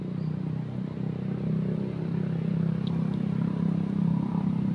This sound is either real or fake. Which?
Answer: real